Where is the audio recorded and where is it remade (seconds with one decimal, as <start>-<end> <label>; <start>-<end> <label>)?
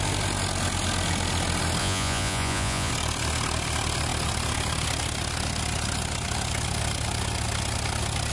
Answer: 0.0-1.8 recorded; 1.8-2.9 remade; 2.9-8.3 recorded